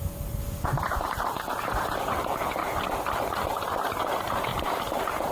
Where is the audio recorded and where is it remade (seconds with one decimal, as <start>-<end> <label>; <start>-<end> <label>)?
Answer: 0.0-2.6 remade; 2.6-3.2 recorded; 3.2-5.3 remade